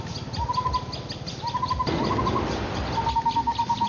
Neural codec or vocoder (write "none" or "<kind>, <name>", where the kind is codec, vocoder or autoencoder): none